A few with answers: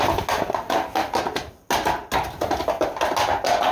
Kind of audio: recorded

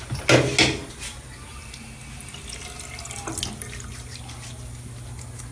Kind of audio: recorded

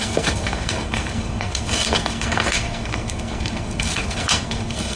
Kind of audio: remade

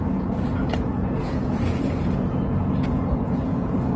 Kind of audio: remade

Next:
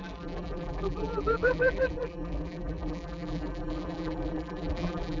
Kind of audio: remade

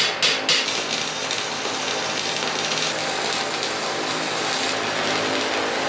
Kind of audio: recorded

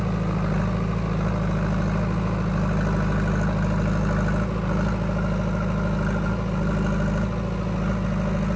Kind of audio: recorded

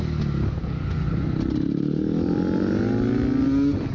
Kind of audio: recorded